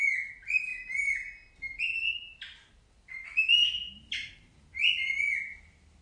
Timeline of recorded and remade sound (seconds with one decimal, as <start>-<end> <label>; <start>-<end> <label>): 0.0-6.0 recorded